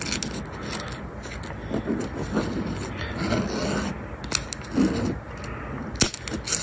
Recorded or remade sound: recorded